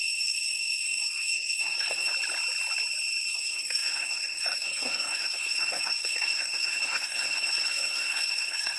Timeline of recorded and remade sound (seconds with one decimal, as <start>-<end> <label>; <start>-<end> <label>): 0.0-2.1 remade; 2.1-3.3 recorded; 3.3-8.8 remade